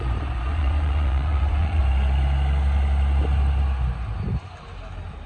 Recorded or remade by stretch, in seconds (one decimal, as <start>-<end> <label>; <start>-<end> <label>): 0.0-1.8 remade; 1.8-5.3 recorded